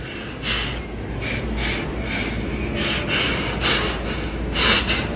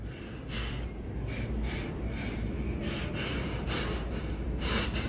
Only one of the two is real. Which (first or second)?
first